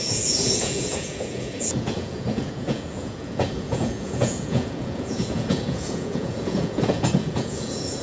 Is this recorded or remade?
remade